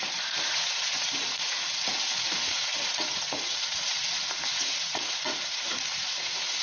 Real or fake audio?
fake